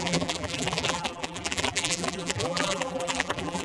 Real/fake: fake